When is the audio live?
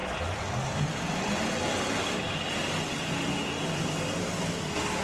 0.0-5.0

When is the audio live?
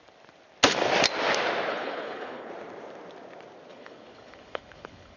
0.0-1.7; 2.5-3.7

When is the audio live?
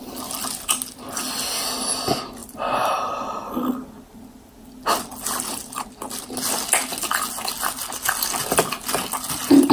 0.0-2.4; 3.1-9.7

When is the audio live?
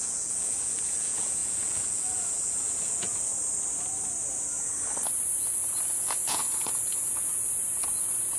3.3-5.1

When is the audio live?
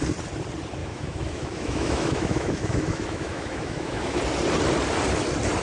0.0-0.8; 4.2-5.6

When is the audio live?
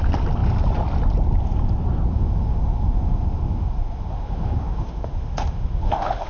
0.0-2.1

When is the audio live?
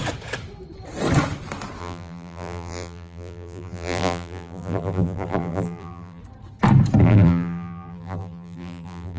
0.0-1.8; 6.2-7.0